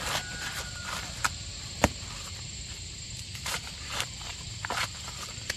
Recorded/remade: remade